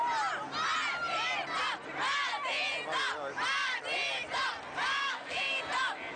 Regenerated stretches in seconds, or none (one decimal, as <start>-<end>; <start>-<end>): 5.0-5.6